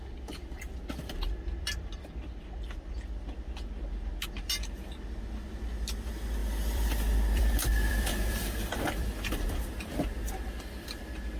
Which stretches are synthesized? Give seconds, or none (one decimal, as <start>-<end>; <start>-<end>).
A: 6.4-9.9